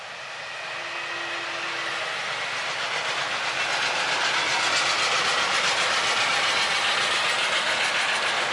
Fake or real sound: real